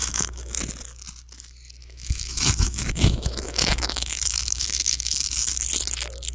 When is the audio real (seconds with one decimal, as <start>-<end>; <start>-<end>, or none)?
0.6-1.8; 5.6-6.3